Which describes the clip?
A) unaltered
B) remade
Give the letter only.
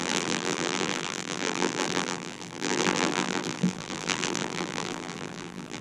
B